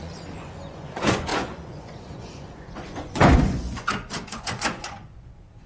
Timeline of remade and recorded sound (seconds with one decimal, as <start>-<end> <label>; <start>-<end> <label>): 0.0-5.7 remade